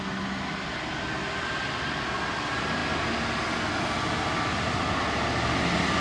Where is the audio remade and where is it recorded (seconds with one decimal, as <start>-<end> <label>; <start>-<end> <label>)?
0.0-6.0 recorded